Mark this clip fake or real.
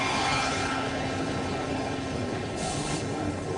fake